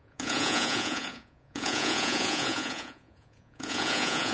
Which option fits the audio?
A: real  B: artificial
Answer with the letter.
B